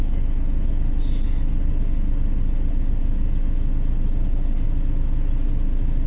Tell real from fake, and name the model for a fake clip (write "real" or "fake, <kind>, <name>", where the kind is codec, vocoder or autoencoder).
real